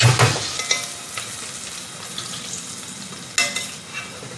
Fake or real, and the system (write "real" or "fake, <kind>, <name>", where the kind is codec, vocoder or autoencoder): real